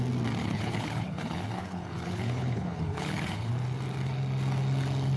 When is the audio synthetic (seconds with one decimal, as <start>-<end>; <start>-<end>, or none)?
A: 0.4-3.5